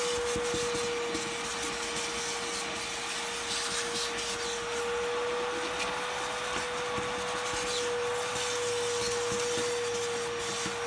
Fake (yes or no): no